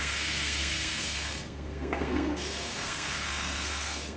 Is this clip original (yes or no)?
no